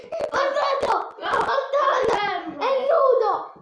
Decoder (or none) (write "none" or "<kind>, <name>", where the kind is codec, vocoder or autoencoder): none